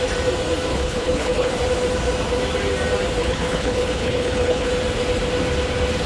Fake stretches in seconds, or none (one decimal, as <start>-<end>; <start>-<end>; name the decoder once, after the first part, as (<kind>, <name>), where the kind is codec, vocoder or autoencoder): 0.7-1.5 (codec, HILCodec); 3.2-4.7